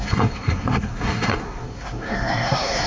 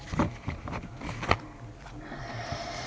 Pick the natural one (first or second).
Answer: second